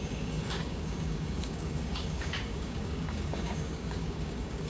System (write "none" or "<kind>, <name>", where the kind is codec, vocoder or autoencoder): codec, DAC